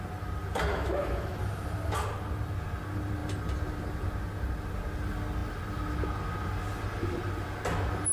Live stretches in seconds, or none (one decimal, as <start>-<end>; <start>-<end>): 0.0-0.7; 1.4-8.1